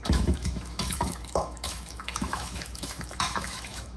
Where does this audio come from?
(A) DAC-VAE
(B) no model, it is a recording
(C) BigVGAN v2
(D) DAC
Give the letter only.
A